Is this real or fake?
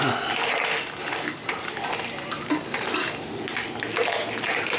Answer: real